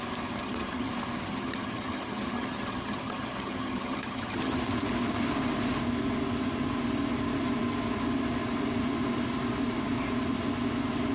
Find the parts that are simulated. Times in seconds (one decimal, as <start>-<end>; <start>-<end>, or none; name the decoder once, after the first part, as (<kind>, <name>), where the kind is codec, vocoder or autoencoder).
0.4-0.9 (vocoder, HiFi-GAN); 1.3-4.6